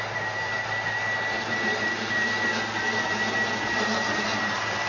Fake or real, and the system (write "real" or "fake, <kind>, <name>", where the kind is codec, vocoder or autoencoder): real